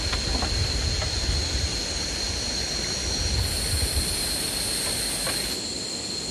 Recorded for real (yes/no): yes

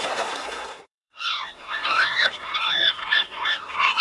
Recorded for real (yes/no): no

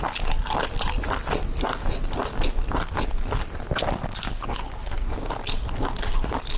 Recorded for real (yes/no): yes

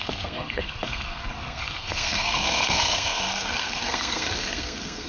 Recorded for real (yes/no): no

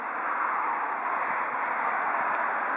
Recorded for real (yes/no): yes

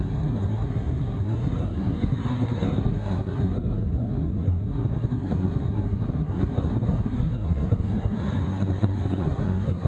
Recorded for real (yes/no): no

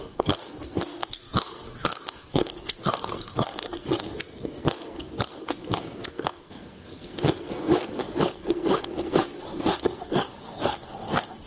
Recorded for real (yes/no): no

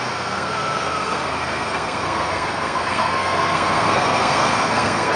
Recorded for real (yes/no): no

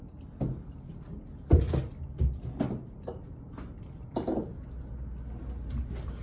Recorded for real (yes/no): yes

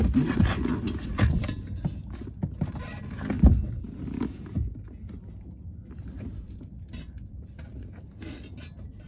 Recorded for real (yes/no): yes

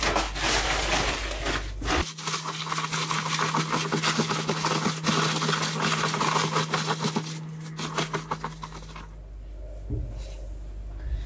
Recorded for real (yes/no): yes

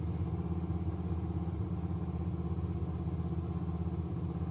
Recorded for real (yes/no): yes